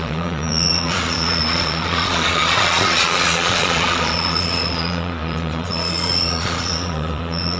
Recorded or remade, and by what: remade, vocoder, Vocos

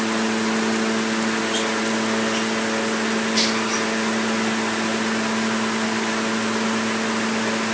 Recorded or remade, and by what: recorded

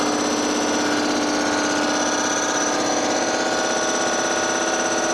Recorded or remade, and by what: recorded